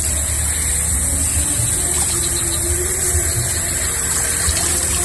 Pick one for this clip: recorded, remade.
recorded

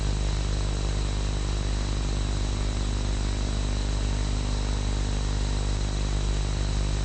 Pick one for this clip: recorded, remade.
recorded